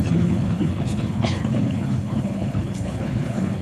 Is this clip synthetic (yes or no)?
yes